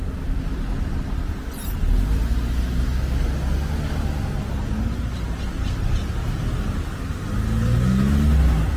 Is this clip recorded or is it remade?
recorded